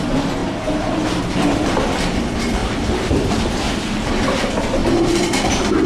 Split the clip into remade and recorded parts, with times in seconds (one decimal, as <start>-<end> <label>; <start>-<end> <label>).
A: 0.0-2.6 recorded; 2.6-4.1 remade; 4.1-4.8 recorded; 4.8-5.9 remade